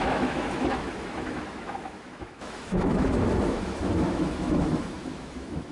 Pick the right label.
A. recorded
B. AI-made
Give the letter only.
B